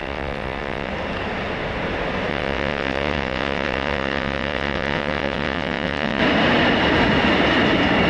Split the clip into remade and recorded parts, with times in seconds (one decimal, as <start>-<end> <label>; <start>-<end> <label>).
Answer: 0.0-0.9 remade; 0.9-2.3 recorded; 2.3-6.2 remade; 6.2-8.1 recorded